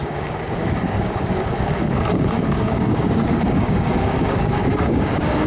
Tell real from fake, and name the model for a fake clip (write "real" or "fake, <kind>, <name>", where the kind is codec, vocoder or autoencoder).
fake, codec, DAC